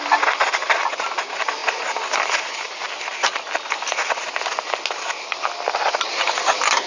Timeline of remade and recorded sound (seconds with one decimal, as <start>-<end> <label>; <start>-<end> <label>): 0.0-6.9 recorded